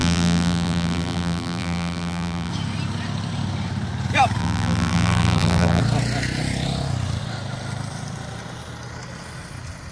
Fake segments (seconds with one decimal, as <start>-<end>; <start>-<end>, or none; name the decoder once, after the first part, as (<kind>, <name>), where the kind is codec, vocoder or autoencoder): 0.0-2.5 (vocoder, BigVGAN v2); 4.4-5.8